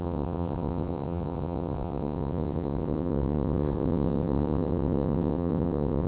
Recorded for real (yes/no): no